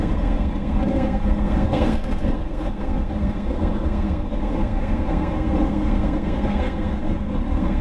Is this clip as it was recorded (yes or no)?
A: no